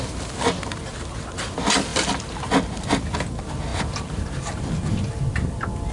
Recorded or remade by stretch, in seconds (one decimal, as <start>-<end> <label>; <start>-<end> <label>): 0.0-5.9 recorded